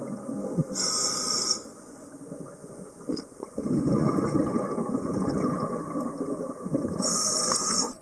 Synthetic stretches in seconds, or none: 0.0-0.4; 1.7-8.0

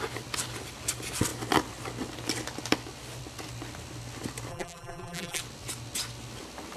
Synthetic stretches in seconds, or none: 4.5-5.4